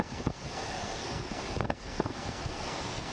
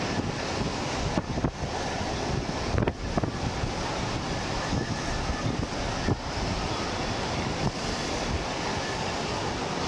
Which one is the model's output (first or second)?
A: first